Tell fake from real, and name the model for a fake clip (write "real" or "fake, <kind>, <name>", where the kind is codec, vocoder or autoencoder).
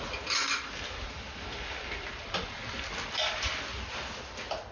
real